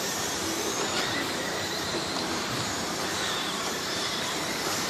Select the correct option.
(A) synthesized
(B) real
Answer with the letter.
A